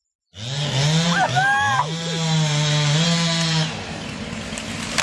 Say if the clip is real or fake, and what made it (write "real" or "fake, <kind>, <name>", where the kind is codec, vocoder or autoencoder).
real